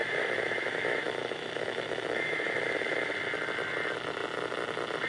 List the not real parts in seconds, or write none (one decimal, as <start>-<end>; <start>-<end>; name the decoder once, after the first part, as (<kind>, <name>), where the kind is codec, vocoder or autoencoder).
0.0-3.1 (autoencoder, DAC-VAE)